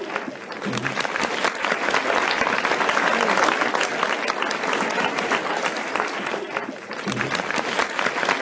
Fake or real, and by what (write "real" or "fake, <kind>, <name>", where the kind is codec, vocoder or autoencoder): real